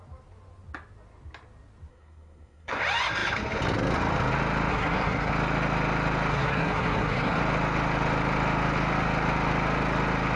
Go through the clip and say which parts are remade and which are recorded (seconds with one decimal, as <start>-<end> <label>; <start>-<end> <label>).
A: 0.0-1.9 recorded; 1.9-2.8 remade; 2.8-4.7 recorded; 4.7-5.3 remade; 5.3-6.3 recorded; 6.3-7.4 remade; 7.4-10.4 recorded